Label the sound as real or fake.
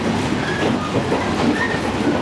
real